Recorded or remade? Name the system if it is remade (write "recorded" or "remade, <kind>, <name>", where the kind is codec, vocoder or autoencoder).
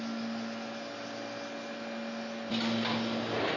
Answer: recorded